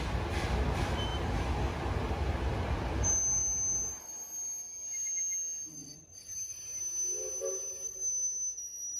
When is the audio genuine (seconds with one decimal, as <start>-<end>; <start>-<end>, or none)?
0.0-5.8; 6.8-9.0